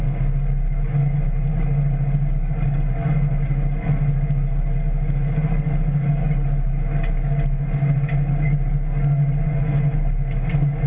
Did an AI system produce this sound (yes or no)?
no